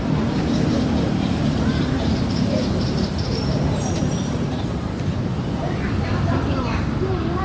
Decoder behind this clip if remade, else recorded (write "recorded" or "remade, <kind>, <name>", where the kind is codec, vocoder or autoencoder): remade, vocoder, BigVGAN v2